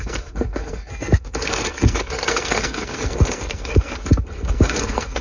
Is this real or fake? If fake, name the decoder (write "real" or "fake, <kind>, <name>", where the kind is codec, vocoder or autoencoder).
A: fake, codec, SNAC